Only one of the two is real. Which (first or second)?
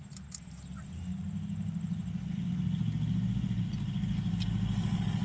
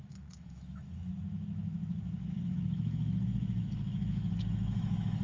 first